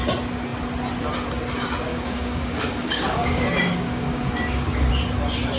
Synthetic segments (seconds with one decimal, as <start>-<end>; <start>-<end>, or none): 1.9-4.9